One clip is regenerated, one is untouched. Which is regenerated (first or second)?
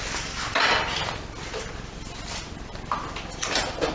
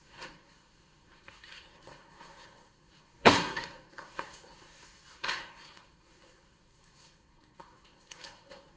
second